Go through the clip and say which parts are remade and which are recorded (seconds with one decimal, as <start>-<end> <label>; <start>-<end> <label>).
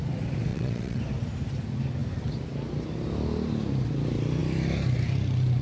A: 0.0-0.5 recorded; 0.5-1.0 remade; 1.0-5.6 recorded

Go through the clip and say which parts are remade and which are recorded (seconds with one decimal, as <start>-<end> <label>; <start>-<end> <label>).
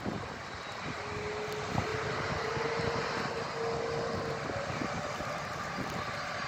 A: 0.0-6.5 recorded